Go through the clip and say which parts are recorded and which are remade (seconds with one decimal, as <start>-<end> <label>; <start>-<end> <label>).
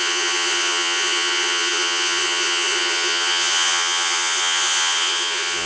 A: 0.0-5.7 remade